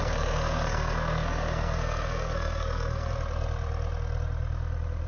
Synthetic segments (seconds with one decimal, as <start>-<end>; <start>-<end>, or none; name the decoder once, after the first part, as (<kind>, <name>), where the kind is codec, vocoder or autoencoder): 0.0-3.1 (codec, SNAC)